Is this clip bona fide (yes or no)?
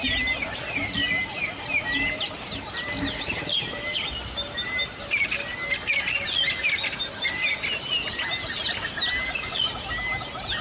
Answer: yes